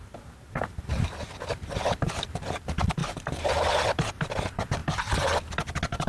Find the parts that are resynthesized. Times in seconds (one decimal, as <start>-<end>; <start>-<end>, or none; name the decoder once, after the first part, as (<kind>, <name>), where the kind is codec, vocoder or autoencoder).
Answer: 0.0-4.8 (vocoder, BigVGAN v2)